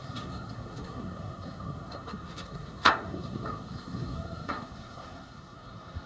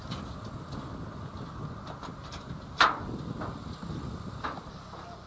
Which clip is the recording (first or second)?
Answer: second